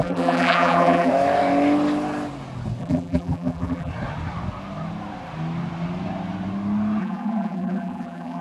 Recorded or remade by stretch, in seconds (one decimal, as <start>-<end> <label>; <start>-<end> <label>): 0.0-1.1 remade; 1.1-2.8 recorded; 2.8-3.9 remade; 3.9-7.0 recorded; 7.0-8.4 remade